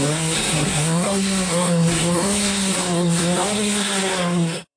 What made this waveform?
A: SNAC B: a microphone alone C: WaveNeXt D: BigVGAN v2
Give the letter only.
A